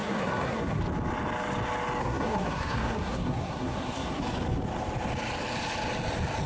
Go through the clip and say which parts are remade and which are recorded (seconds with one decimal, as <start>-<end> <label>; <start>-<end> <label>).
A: 0.0-0.8 remade; 0.8-2.0 recorded; 2.0-4.2 remade; 4.2-6.5 recorded